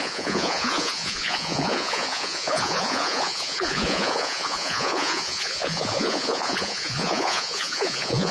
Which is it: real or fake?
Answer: fake